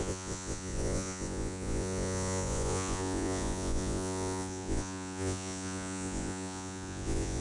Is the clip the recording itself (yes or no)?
no